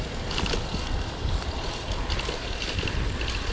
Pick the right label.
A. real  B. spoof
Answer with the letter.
A